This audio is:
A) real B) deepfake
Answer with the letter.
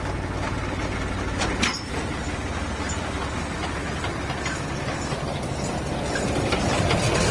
A